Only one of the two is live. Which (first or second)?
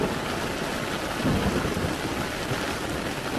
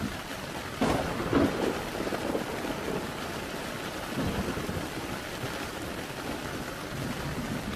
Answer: first